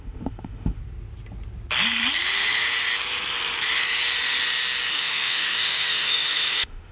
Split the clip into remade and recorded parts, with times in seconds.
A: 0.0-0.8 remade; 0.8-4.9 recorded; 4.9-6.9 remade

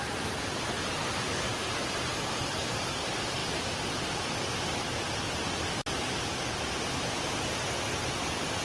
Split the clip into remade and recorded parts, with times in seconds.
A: 0.0-8.6 recorded

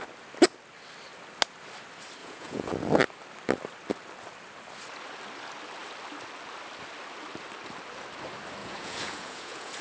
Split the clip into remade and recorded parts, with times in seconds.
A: 0.0-2.2 recorded; 2.2-2.7 remade; 2.7-8.6 recorded; 8.6-9.8 remade

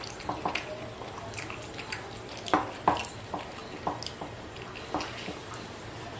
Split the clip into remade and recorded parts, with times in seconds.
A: 0.0-6.2 recorded

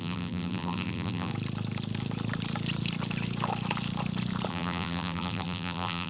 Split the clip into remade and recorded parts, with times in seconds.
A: 0.0-1.3 remade; 1.3-4.5 recorded; 4.5-6.1 remade